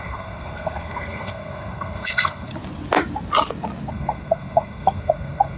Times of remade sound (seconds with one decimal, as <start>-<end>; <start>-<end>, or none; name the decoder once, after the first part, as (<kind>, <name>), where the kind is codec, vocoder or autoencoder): 0.0-2.5 (codec, SNAC); 3.9-5.6

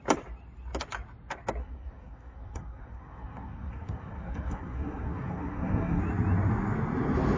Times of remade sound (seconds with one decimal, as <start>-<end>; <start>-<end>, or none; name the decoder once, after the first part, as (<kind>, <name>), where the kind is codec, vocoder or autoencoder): 1.6-6.0 (codec, SNAC)

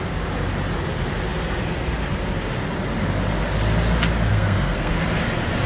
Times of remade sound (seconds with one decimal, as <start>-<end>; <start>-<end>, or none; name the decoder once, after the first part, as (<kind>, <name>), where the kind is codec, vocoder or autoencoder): 4.3-4.9 (codec, SNAC)

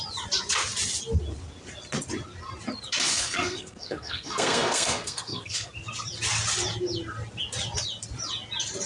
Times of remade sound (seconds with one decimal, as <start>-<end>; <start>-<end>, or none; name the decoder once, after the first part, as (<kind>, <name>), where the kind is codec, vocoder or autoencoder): 3.1-5.7 (codec, SNAC)

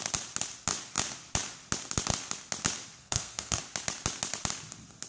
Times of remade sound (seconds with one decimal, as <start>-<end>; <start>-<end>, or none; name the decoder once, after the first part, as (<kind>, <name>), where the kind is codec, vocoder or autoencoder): 3.0-3.6 (codec, SNAC)